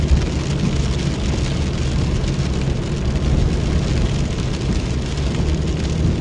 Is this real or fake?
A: real